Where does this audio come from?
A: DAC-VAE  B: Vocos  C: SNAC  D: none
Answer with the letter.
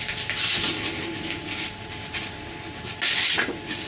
D